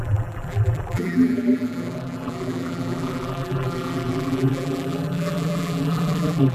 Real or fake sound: fake